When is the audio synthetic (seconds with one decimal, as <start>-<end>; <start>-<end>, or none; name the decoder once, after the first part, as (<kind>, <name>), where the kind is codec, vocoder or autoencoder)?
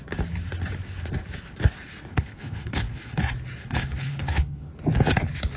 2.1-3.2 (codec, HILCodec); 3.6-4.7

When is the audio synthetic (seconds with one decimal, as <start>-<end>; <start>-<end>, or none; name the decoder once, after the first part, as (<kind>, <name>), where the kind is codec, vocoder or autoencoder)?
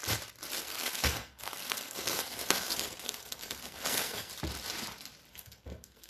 0.6-4.3 (codec, SNAC); 5.3-6.1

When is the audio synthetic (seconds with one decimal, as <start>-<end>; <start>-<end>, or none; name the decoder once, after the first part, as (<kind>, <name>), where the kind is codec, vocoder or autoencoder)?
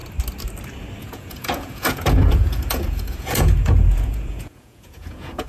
1.0-5.5 (vocoder, Vocos)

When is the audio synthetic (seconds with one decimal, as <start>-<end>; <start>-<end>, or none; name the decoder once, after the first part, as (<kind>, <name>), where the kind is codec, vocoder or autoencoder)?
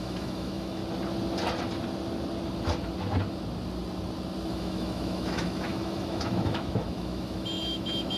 0.0-0.8 (autoencoder, DAC-VAE); 4.5-8.2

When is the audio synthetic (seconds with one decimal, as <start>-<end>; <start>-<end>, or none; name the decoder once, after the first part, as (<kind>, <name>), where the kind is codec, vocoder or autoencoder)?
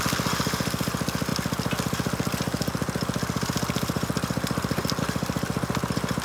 none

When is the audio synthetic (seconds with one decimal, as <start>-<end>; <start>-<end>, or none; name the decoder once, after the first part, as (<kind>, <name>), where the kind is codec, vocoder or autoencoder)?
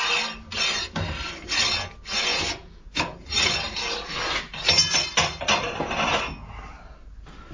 2.3-3.3 (vocoder, Vocos)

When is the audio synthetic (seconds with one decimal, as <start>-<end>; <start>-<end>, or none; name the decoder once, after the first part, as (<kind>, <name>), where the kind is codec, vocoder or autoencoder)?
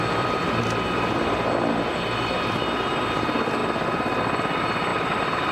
none